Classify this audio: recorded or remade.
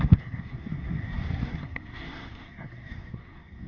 remade